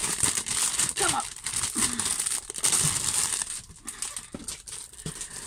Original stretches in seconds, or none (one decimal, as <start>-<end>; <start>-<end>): 0.0-5.5